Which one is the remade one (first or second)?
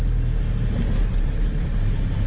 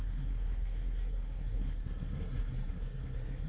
second